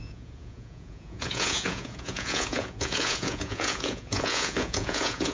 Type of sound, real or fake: fake